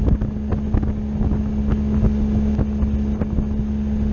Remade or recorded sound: recorded